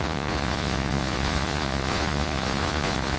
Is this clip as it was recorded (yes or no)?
no